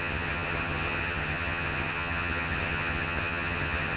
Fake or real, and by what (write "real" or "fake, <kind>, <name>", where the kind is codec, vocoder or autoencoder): fake, vocoder, HiFi-GAN